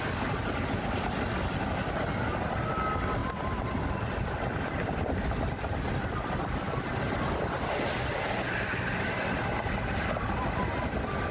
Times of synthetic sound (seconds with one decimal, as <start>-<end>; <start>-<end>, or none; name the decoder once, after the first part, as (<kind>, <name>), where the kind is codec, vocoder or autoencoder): none